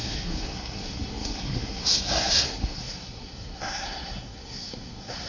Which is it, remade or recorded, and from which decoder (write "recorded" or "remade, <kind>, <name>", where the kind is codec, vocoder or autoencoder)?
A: remade, codec, SNAC